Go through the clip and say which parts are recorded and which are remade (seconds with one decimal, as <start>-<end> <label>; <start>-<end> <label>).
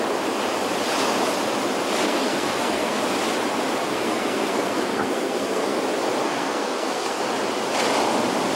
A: 0.0-2.0 recorded; 2.0-3.0 remade; 3.0-3.8 recorded; 3.8-5.8 remade; 5.8-6.2 recorded; 6.2-7.2 remade; 7.2-8.5 recorded